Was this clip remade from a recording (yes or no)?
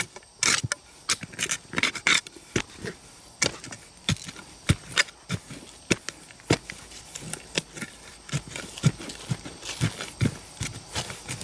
no